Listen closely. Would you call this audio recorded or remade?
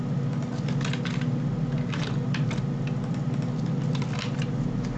recorded